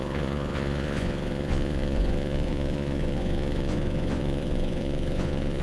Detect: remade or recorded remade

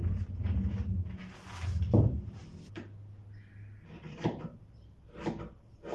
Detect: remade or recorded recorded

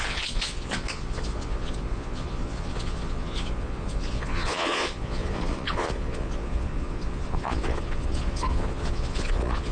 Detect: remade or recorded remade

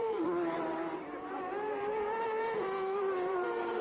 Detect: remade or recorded remade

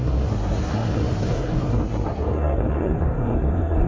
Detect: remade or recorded remade